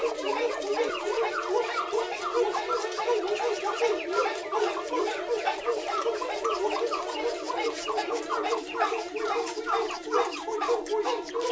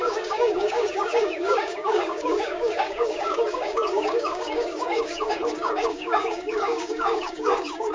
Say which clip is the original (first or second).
first